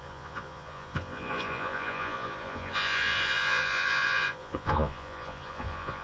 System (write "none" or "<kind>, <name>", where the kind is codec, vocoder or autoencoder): vocoder, Vocos